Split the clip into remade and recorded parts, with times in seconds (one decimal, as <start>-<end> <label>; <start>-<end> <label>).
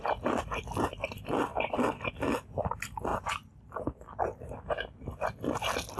0.0-6.0 recorded